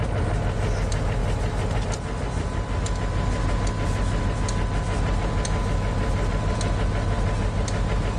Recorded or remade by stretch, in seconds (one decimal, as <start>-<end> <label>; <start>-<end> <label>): 0.0-8.2 recorded